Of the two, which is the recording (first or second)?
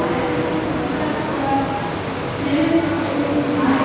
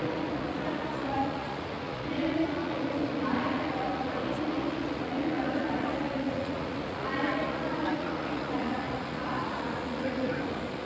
first